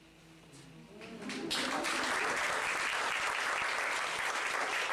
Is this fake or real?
real